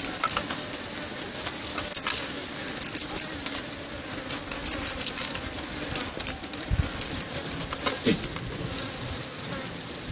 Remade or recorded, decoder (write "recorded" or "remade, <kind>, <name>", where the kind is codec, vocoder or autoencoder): recorded